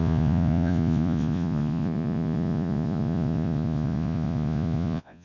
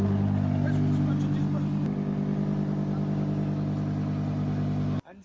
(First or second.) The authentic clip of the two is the second